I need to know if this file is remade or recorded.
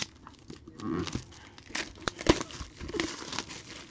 recorded